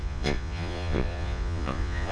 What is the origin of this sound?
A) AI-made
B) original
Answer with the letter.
A